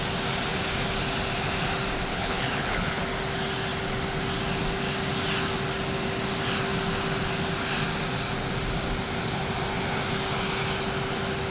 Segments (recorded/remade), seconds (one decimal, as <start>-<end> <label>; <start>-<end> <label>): 0.0-2.1 recorded; 2.1-3.0 remade; 3.0-11.5 recorded